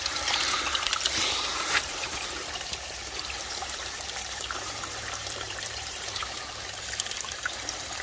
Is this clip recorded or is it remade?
remade